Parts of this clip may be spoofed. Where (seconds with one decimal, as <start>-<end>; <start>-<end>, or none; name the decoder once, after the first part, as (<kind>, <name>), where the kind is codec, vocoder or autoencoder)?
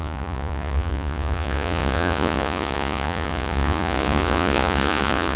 0.0-5.4 (vocoder, Vocos)